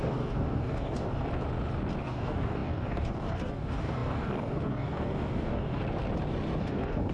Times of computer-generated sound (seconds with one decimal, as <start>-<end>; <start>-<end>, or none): 0.0-1.3; 2.0-5.8; 6.6-7.1